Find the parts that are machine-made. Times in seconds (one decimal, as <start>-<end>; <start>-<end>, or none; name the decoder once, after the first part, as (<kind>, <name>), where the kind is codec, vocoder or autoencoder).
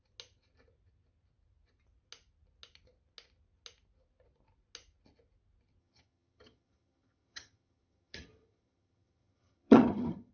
5.8-10.3 (vocoder, HiFi-GAN)